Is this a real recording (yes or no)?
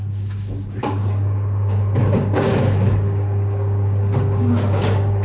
no